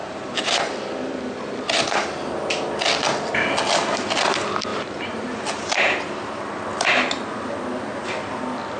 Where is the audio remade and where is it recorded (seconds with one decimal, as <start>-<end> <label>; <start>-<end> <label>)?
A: 0.0-0.6 remade; 0.6-4.7 recorded; 4.7-6.6 remade; 6.6-8.8 recorded